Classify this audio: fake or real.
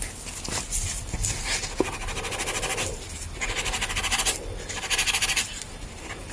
real